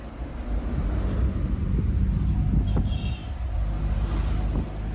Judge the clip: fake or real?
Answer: real